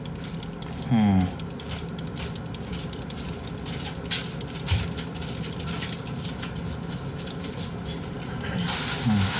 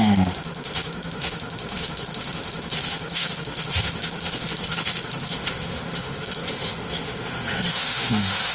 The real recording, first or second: first